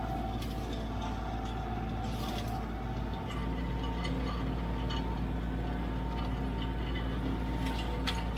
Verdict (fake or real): real